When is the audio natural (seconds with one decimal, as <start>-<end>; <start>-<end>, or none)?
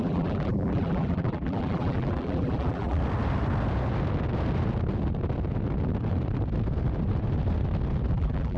3.0-8.1